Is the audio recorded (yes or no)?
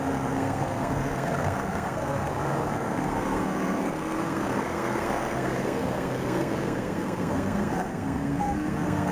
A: no